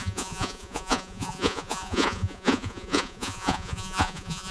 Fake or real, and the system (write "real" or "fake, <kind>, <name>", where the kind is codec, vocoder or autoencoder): fake, vocoder, Vocos